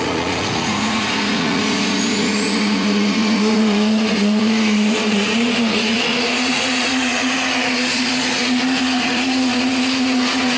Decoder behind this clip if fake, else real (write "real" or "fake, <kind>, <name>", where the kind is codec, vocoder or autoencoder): fake, vocoder, Vocos